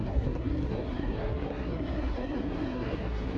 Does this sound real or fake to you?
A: fake